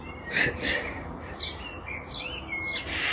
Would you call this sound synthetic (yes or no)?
no